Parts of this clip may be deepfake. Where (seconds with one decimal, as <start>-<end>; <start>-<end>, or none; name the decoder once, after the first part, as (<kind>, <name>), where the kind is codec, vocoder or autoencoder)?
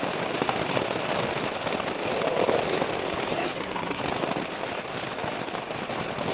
3.3-4.0 (codec, SNAC)